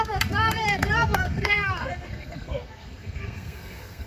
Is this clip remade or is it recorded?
remade